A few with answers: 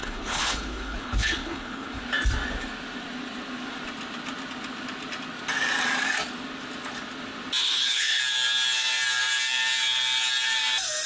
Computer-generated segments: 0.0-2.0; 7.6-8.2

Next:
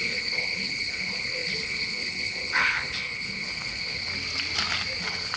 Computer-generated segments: 0.0-4.1; 5.0-5.4

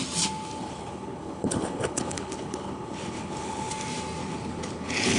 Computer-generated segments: 0.6-3.7; 4.2-5.2

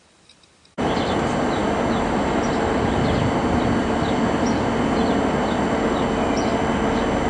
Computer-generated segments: none

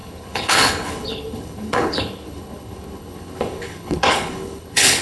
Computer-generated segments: 0.0-5.0

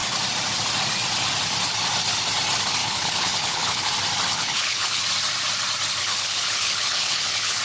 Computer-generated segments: 2.8-3.9; 4.3-5.0; 6.0-7.6